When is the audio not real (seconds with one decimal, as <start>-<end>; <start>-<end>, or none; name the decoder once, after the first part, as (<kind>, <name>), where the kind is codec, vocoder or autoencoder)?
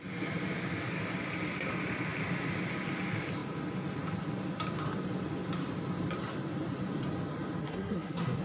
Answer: 7.6-8.4 (codec, SNAC)